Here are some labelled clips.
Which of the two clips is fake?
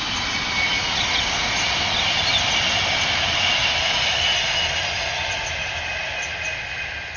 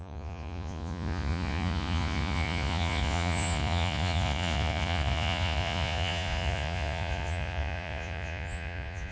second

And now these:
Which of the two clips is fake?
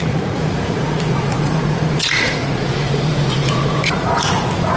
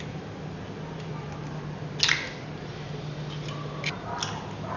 first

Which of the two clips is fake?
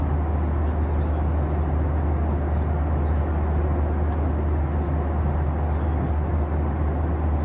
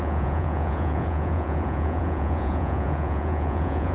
second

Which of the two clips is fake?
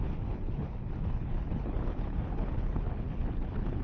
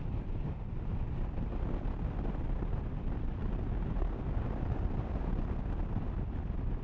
first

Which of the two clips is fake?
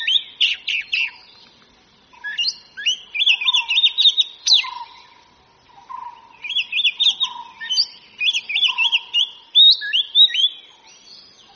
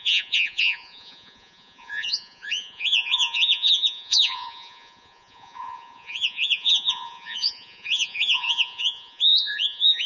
second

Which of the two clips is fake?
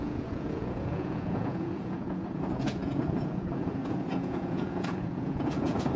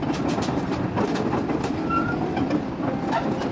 first